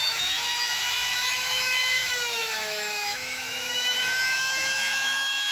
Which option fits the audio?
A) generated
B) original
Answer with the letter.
A